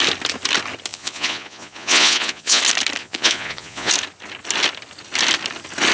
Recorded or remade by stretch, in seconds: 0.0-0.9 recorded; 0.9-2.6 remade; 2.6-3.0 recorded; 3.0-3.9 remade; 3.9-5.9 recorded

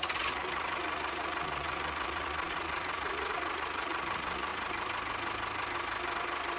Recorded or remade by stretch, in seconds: 0.0-4.5 remade; 4.5-6.6 recorded

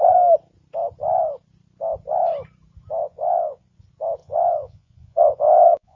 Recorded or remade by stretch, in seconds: 0.0-3.0 recorded; 3.0-3.6 remade; 3.6-4.2 recorded; 4.2-6.0 remade

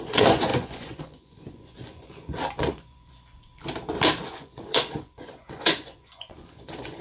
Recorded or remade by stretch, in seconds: 0.0-3.5 remade; 3.5-4.3 recorded; 4.3-7.0 remade